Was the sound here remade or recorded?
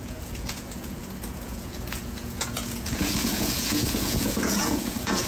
remade